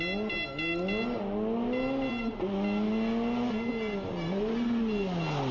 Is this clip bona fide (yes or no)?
yes